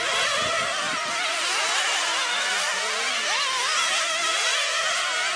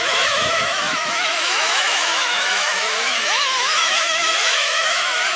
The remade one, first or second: second